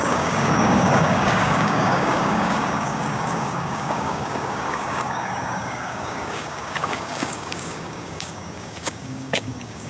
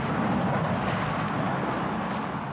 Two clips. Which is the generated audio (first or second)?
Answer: first